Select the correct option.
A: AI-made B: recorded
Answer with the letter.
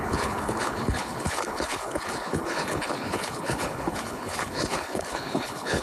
A